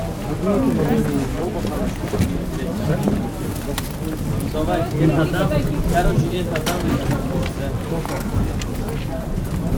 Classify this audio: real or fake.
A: real